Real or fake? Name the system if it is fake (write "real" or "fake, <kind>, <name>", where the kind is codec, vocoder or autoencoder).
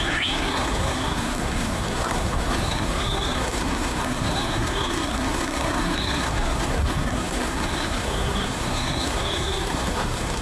fake, codec, SNAC